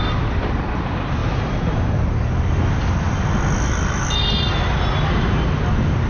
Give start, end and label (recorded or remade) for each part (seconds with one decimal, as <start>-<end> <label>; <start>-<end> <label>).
0.0-6.1 recorded